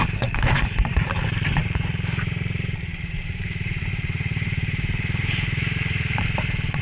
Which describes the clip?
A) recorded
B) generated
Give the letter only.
B